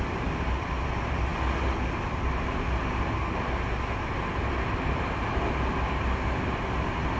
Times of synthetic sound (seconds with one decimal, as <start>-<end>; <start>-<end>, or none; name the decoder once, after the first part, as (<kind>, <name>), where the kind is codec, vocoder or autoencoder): none